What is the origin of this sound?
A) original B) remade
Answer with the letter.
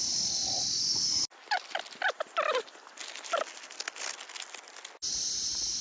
A